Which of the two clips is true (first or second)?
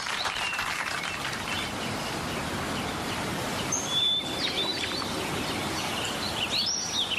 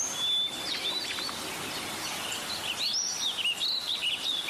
second